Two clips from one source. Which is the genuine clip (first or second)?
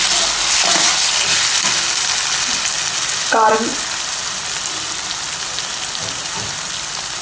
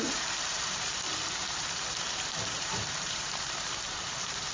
first